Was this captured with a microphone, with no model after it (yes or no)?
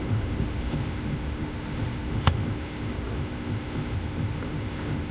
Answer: no